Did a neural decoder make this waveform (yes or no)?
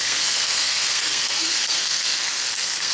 yes